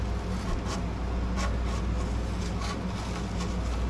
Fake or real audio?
real